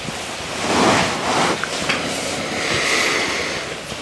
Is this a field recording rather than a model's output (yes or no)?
yes